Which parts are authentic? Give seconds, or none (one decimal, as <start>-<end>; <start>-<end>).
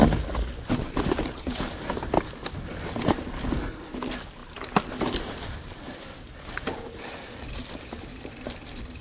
0.0-0.8; 2.1-4.4; 7.4-8.1